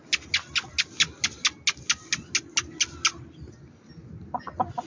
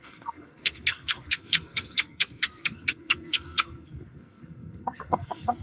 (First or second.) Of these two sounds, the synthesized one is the second